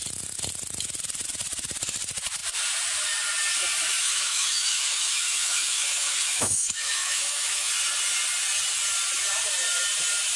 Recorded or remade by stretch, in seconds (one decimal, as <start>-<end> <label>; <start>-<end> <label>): 0.0-4.0 recorded; 4.0-7.7 remade; 7.7-10.4 recorded